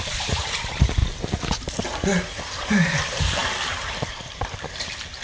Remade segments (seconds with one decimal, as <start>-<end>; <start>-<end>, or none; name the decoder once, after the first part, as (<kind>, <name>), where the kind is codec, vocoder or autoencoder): 0.0-1.0 (vocoder, BigVGAN v2); 2.6-5.2